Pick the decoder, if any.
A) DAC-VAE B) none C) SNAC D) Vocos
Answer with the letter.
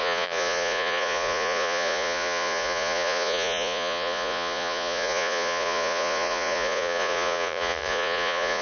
D